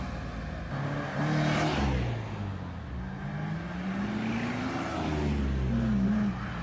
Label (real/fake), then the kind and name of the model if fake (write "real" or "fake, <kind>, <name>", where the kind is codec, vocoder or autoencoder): real